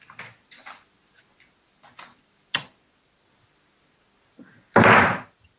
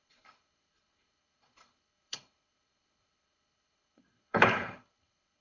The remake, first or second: second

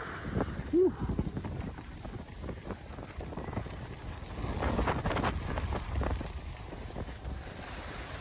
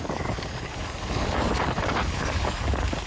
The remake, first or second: second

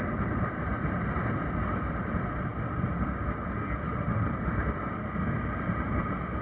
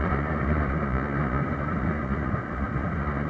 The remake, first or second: second